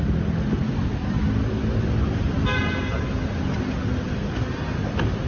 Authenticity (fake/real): real